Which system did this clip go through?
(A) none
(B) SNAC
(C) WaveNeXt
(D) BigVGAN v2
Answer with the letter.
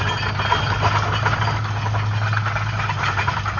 A